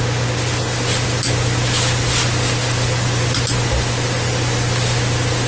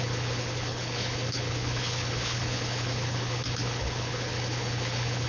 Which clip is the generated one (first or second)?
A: second